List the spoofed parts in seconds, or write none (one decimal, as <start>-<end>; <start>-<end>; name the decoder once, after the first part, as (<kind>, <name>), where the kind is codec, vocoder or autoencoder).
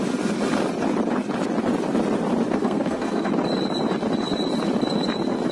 2.6-3.3 (codec, SNAC)